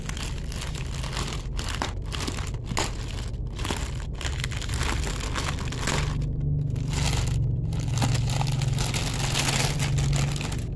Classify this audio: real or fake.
real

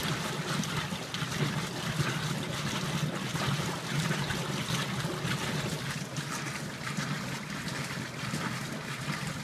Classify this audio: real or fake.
real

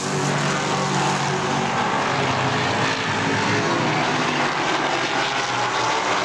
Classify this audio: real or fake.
real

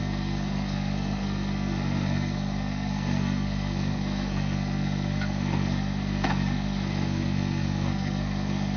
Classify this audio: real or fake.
fake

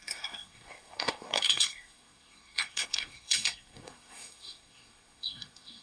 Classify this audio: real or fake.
fake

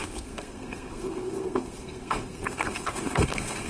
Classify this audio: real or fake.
fake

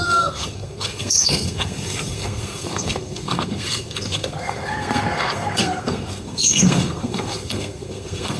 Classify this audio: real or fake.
fake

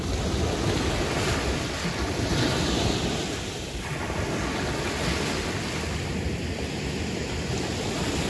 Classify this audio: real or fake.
real